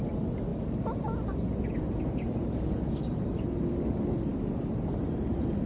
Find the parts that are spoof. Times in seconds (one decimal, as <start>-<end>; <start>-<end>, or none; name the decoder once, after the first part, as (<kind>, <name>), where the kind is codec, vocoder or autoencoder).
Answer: none